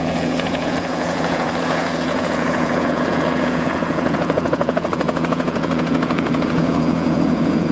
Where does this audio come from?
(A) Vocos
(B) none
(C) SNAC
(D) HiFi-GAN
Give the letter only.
A